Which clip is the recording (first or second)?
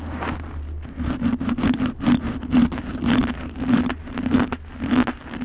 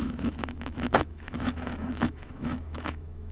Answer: first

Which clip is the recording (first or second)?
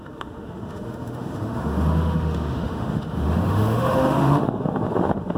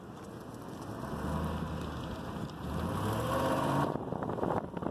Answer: second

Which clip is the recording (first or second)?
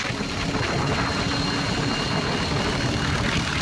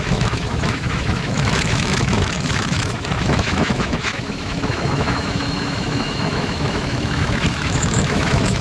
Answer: first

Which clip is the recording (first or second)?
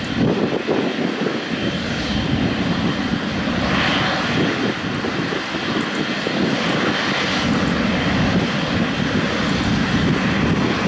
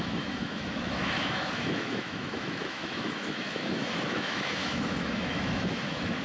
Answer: first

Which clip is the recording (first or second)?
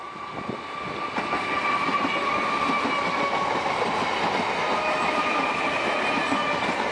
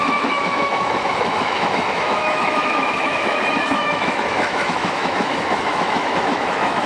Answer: first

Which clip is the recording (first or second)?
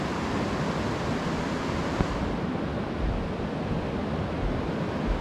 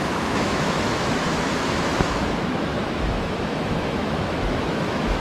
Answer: first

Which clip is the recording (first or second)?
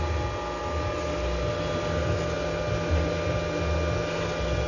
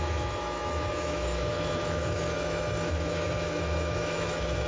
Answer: first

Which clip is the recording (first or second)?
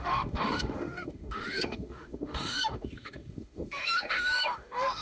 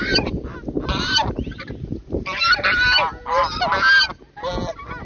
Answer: second